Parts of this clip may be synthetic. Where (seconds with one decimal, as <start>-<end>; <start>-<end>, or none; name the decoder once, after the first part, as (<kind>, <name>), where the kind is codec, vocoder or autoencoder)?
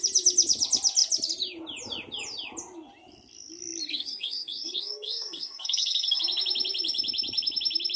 3.9-6.2 (codec, SNAC)